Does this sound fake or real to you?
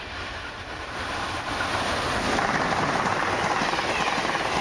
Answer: real